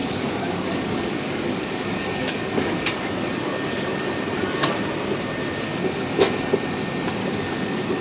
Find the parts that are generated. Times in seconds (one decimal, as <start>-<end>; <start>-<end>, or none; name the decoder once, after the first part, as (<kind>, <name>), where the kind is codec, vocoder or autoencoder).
0.0-4.7 (codec, DAC); 7.2-8.0